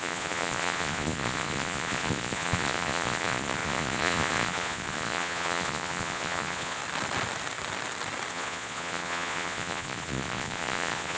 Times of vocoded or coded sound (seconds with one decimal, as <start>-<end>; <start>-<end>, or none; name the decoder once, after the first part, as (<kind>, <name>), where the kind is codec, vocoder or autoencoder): 0.0-6.8 (vocoder, Vocos); 8.3-11.2

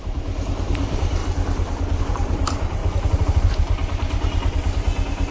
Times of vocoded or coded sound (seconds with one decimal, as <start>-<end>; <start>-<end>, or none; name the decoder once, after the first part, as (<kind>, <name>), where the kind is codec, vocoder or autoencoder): 0.0-1.2 (vocoder, BigVGAN v2); 2.0-2.8; 3.5-5.3

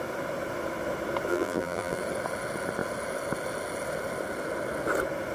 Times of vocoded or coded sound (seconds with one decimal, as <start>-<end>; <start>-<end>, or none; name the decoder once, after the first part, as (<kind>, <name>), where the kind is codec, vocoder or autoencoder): 1.3-2.0 (vocoder, BigVGAN v2)

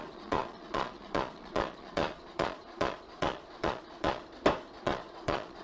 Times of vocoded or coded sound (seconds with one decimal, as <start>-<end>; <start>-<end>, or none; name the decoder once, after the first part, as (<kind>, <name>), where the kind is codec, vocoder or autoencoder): 0.0-4.2 (vocoder, Vocos); 4.8-5.6

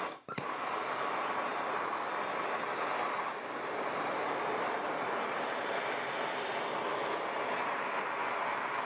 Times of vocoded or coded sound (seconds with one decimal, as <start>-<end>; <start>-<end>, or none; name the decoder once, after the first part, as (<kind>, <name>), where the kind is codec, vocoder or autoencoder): none

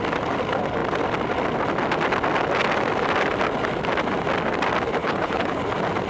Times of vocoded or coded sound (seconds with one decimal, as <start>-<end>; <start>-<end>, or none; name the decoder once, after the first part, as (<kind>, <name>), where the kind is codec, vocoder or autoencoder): 5.0-5.6 (codec, HILCodec)

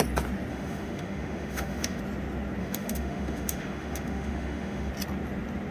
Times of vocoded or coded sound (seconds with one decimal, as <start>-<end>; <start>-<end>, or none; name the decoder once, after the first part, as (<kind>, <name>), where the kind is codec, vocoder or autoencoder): 0.5-2.0 (autoencoder, DAC-VAE); 2.6-4.9